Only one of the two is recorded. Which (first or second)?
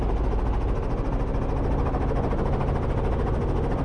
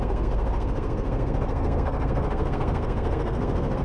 first